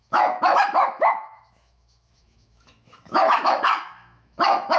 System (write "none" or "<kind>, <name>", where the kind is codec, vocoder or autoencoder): autoencoder, DAC-VAE